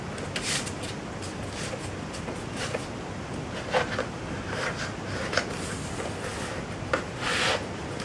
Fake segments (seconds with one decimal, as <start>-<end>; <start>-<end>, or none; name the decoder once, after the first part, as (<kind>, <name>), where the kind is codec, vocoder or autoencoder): none